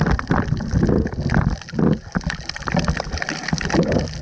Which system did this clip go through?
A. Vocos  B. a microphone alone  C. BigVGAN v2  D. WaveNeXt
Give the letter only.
B